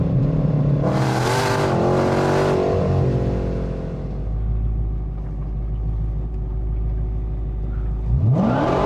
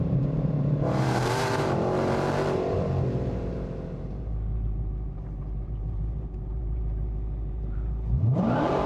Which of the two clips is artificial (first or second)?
second